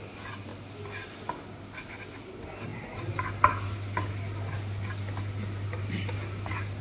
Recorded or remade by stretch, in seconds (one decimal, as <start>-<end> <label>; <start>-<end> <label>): 0.0-6.8 recorded

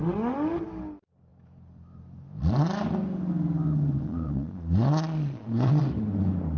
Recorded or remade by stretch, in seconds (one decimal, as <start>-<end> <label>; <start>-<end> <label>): 0.0-4.0 recorded; 4.0-5.8 remade; 5.8-6.6 recorded

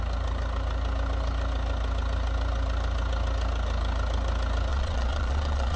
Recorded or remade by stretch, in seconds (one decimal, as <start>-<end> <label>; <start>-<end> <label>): 0.0-4.7 recorded; 4.7-5.8 remade

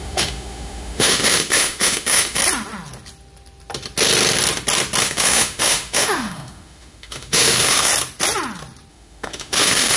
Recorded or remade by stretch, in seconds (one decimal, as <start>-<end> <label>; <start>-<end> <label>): 0.0-2.4 remade; 2.4-5.0 recorded; 5.0-7.9 remade; 7.9-8.9 recorded; 8.9-10.0 remade

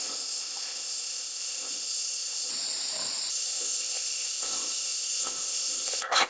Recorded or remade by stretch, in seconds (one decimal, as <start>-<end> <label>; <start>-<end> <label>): 0.0-2.5 remade; 2.5-3.3 recorded; 3.3-6.3 remade